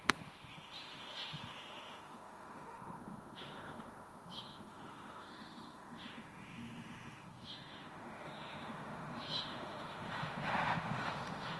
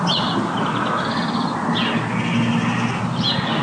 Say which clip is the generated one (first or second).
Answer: first